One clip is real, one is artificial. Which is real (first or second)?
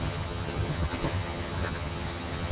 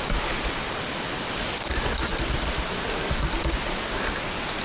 second